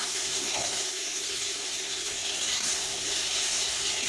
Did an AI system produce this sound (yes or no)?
yes